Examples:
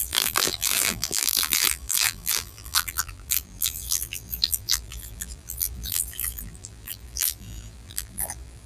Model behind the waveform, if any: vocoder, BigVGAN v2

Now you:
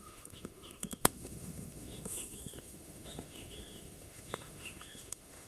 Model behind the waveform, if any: autoencoder, DAC-VAE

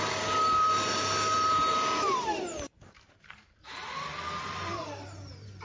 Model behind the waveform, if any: vocoder, BigVGAN v2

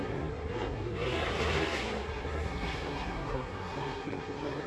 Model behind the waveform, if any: codec, SNAC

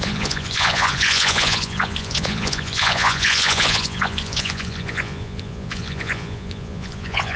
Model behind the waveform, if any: vocoder, Vocos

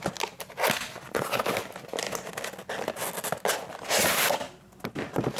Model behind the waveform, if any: none